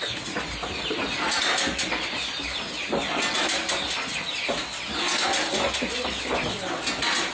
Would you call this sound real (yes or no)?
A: yes